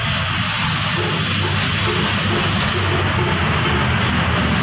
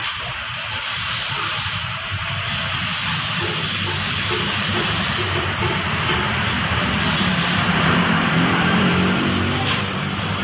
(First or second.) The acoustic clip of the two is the first